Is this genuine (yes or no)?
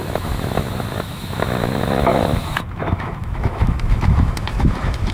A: no